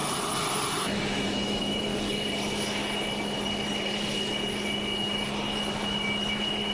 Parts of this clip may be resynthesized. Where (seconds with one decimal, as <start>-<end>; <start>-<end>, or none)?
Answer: 0.8-1.9; 5.9-6.7